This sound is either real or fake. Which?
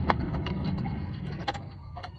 fake